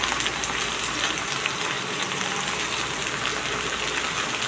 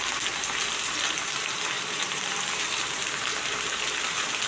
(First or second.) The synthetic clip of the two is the second